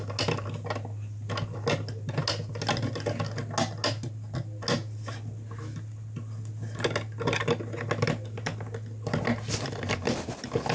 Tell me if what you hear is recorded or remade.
recorded